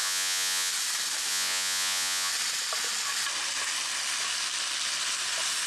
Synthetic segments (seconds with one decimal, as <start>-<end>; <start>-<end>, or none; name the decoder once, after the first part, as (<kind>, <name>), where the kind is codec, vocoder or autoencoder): 0.0-0.7 (vocoder, Vocos); 1.3-2.3